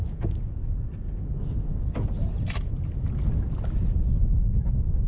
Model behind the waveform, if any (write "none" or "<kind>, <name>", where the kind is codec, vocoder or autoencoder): none